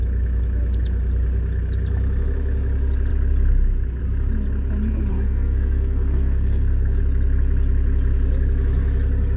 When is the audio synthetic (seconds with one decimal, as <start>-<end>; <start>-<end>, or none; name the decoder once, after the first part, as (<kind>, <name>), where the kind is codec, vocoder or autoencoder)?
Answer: 5.1-7.0 (codec, SNAC)